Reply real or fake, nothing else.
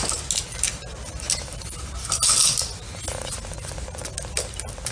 real